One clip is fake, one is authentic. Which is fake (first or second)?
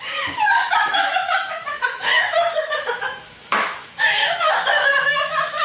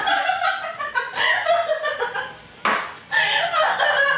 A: first